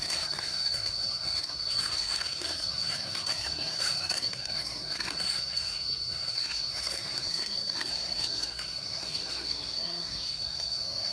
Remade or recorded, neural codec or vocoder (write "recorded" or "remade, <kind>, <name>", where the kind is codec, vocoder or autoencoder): remade, codec, SNAC